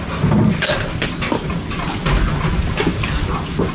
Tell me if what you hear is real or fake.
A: real